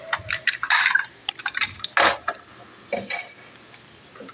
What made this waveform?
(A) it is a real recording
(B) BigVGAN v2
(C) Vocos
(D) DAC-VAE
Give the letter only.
A